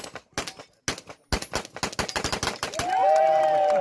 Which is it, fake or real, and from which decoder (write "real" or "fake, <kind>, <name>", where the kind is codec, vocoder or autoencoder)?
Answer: real